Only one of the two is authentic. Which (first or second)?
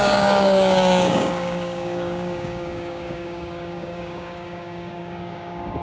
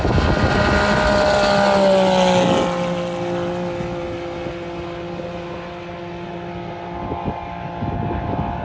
second